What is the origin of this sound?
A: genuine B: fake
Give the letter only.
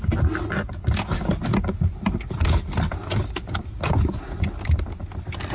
A